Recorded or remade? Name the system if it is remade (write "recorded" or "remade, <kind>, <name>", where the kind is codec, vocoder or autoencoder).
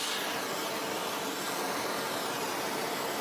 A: recorded